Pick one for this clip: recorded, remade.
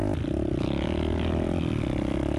recorded